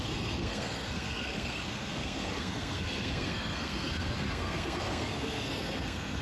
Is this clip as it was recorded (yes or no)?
no